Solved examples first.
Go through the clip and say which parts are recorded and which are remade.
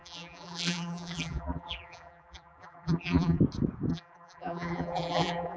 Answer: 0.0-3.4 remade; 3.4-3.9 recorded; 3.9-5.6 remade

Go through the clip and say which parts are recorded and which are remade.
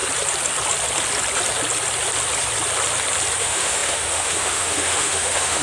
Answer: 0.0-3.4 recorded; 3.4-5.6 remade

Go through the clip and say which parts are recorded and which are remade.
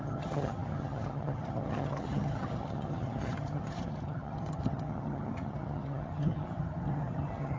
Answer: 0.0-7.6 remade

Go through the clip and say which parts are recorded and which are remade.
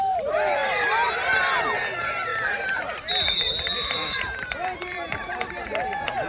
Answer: 0.0-6.3 remade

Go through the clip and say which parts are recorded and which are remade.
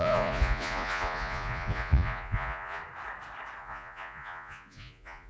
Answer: 0.0-2.8 remade; 2.8-3.6 recorded; 3.6-5.3 remade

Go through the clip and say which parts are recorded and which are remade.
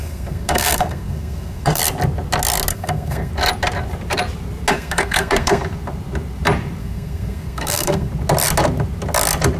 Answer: 0.0-1.8 remade; 1.8-2.7 recorded; 2.7-3.3 remade; 3.3-4.7 recorded; 4.7-5.6 remade; 5.6-6.8 recorded; 6.8-8.1 remade; 8.1-9.6 recorded